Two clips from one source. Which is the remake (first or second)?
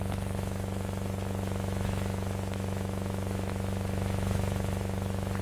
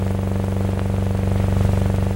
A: first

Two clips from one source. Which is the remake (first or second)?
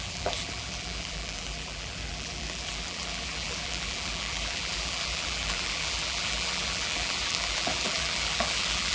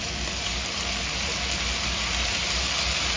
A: first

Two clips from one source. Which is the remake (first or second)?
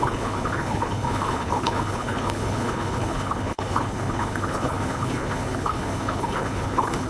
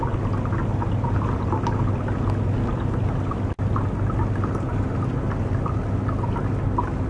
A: first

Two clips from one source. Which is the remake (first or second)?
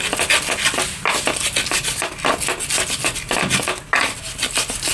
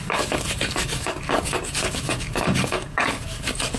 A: second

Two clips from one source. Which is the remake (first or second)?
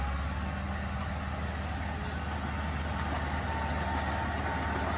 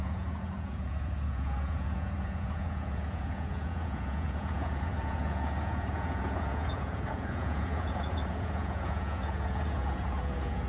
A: second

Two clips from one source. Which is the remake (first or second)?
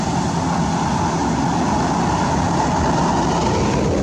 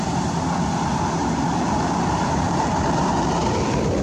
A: second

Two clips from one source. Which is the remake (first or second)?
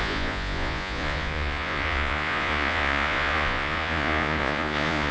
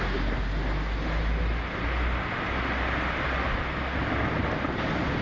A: first